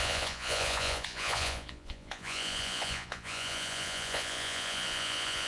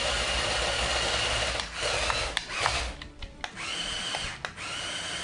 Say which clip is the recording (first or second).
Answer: second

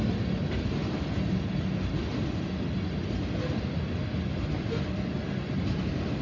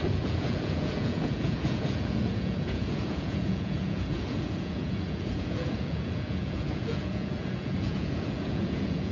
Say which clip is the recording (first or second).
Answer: first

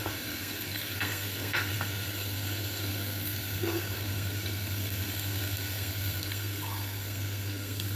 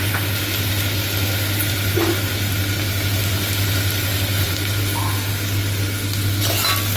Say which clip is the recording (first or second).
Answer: second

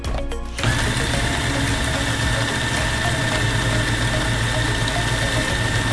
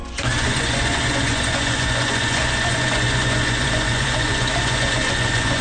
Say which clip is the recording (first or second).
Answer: first